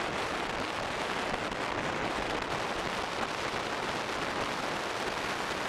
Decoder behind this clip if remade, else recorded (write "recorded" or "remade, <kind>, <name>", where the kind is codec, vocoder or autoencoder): recorded